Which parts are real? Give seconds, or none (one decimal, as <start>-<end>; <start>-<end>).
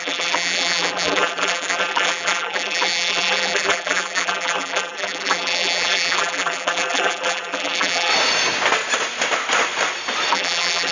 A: 8.1-10.3